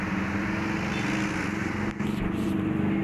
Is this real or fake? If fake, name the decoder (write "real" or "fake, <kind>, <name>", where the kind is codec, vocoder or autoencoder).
real